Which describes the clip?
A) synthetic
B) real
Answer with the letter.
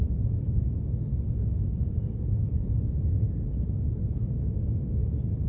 B